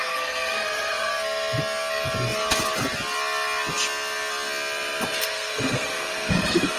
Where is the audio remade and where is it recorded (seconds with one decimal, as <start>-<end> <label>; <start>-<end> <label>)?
0.0-1.1 remade; 1.1-5.2 recorded; 5.2-6.8 remade